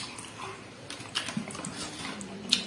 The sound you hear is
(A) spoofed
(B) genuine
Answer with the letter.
B